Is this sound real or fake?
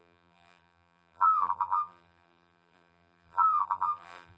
fake